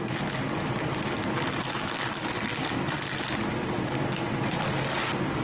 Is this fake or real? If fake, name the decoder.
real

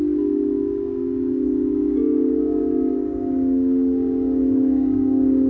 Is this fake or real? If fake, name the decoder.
fake, codec, DAC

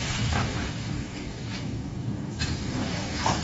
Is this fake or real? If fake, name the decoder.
fake, codec, DAC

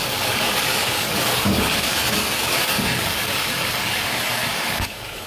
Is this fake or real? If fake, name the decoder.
fake, codec, DAC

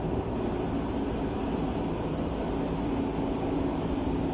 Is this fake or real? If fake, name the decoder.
real